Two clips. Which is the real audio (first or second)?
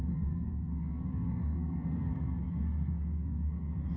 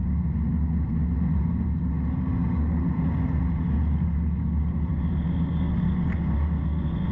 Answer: second